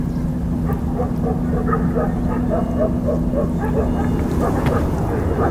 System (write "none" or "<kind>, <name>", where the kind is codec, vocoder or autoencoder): none